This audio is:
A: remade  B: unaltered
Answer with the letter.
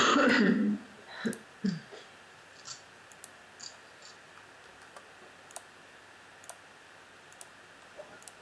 B